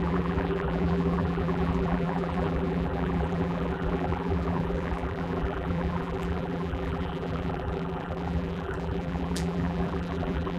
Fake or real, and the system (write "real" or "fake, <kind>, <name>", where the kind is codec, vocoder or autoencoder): fake, vocoder, BigVGAN v2